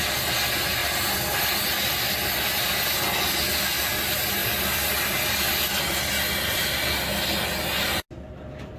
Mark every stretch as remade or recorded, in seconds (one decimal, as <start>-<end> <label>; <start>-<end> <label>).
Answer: 0.0-8.8 recorded